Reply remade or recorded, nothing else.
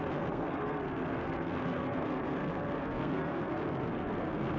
remade